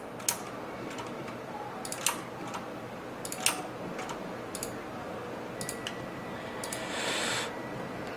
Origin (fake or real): real